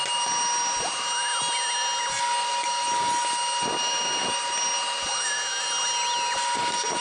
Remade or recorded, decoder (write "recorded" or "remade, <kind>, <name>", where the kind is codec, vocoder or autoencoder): recorded